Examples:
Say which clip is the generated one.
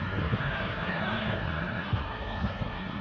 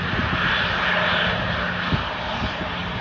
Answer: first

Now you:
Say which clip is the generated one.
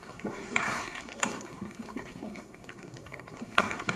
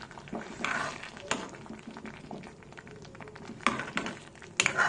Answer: first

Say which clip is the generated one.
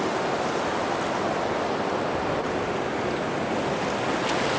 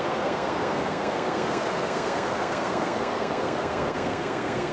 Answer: second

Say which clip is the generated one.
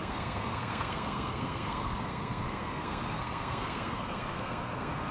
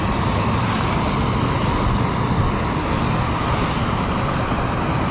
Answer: first